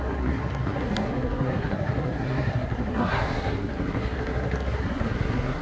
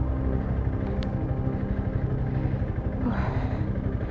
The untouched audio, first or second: second